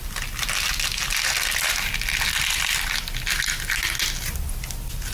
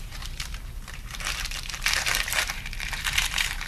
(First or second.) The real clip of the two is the first